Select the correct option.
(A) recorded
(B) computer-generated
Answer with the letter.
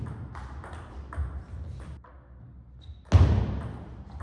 A